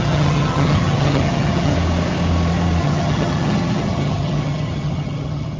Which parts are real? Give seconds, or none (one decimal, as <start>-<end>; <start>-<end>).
1.7-2.8